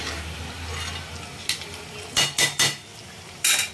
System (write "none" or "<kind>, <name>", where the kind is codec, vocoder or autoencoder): none